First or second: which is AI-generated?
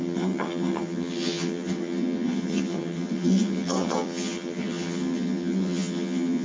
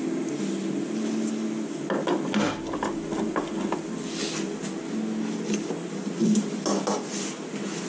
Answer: first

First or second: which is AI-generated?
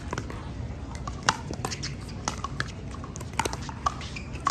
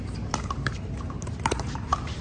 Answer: second